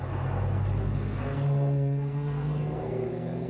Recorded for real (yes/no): no